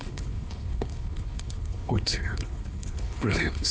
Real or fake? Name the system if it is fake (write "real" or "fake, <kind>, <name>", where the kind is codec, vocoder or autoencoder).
fake, codec, HILCodec